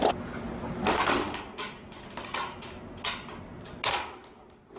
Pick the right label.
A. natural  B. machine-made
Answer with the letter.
A